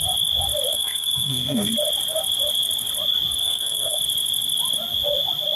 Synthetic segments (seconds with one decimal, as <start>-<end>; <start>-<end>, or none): 0.7-1.7; 3.4-4.0